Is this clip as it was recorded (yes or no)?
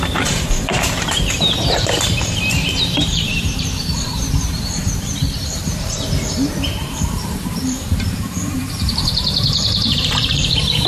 no